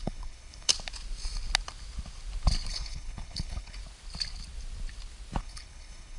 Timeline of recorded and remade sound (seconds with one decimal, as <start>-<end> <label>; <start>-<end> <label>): 0.0-0.7 remade; 0.7-2.7 recorded; 2.7-3.8 remade; 3.8-5.4 recorded; 5.4-6.2 remade